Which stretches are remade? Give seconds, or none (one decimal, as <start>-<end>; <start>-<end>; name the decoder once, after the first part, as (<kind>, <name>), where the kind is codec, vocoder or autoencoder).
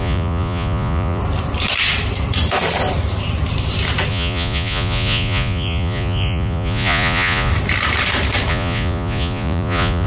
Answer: 0.0-1.2 (vocoder, Vocos); 4.1-7.5; 8.5-10.1